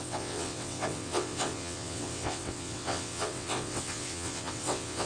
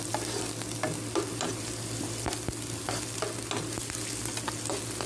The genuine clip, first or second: second